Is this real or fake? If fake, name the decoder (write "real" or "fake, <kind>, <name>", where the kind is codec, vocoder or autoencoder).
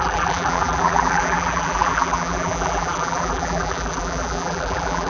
fake, vocoder, BigVGAN v2